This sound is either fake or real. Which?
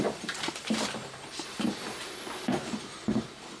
fake